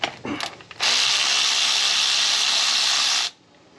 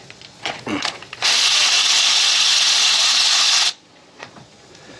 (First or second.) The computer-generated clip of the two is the second